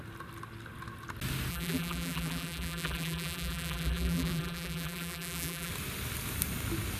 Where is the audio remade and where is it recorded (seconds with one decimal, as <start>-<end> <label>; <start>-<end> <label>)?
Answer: 0.0-1.5 recorded; 1.5-5.7 remade; 5.7-7.0 recorded